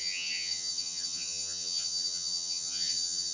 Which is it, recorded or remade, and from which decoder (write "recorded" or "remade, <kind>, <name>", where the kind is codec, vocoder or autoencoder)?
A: remade, vocoder, HiFi-GAN